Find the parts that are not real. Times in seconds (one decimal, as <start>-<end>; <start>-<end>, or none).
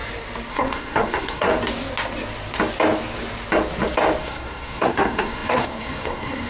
0.5-1.5; 4.2-6.5